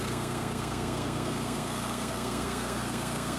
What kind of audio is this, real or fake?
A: fake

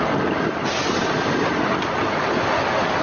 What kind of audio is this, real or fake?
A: real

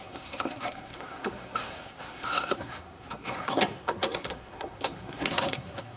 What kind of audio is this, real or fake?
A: fake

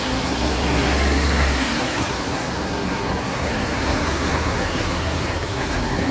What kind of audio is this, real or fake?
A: fake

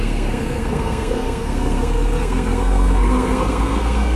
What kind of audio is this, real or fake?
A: fake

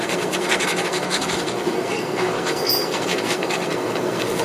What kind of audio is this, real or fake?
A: fake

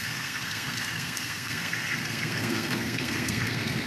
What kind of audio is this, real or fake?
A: fake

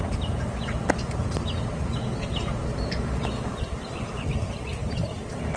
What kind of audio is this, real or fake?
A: real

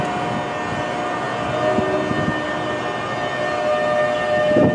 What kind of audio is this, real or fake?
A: real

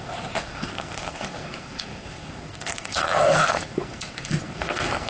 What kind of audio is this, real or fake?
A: fake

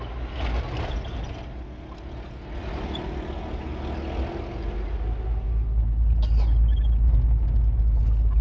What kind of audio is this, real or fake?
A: real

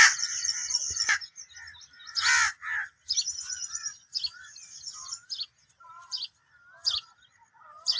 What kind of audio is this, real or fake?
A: real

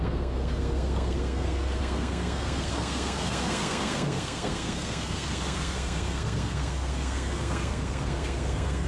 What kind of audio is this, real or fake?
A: fake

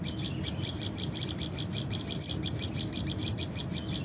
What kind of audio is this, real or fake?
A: real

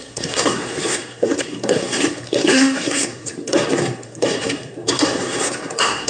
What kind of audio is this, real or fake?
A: fake